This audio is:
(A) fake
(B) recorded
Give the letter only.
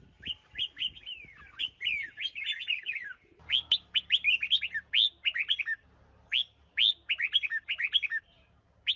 B